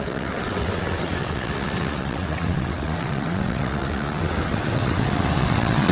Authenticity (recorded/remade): remade